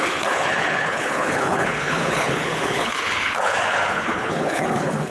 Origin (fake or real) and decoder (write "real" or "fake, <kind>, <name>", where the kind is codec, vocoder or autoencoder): fake, codec, HILCodec